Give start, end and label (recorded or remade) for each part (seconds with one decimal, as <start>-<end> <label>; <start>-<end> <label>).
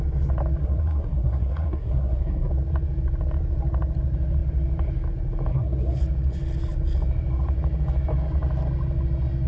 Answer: 0.0-0.6 recorded; 0.6-2.5 remade; 2.5-5.5 recorded; 5.5-6.0 remade; 6.0-9.5 recorded